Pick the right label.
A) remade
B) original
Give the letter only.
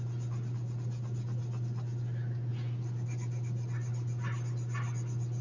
B